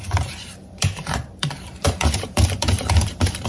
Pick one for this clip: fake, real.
fake